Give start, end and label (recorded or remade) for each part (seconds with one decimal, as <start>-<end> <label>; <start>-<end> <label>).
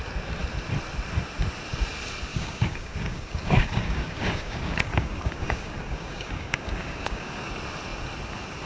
0.0-2.3 recorded; 2.3-7.5 remade; 7.5-8.7 recorded